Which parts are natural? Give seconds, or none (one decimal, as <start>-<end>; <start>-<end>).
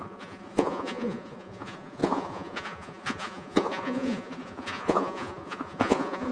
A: none